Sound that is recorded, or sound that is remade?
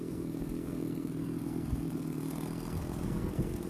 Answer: remade